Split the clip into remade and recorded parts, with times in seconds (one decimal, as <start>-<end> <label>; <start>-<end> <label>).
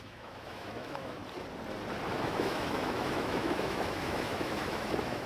0.0-1.2 remade; 1.2-2.1 recorded; 2.1-5.3 remade